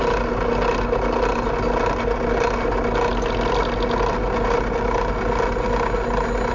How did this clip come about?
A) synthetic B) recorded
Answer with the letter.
B